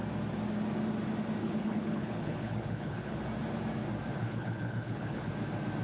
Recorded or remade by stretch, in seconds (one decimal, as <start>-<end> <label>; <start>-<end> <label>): 0.0-1.4 recorded; 1.4-3.2 remade; 3.2-4.1 recorded; 4.1-5.3 remade; 5.3-5.8 recorded